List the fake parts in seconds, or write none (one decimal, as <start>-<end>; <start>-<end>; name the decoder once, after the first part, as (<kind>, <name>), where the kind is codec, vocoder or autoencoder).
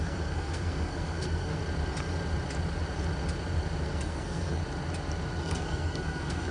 0.0-1.6 (codec, SNAC); 3.8-4.6; 5.4-6.5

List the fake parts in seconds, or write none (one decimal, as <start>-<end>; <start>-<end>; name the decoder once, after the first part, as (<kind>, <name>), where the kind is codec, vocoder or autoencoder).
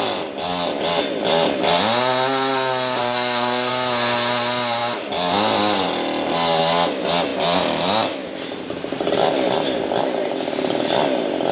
3.0-3.7 (codec, SNAC)